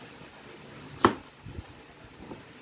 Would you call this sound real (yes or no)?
yes